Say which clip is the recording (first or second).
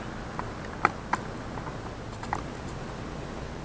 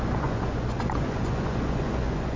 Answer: first